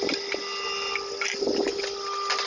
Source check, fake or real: real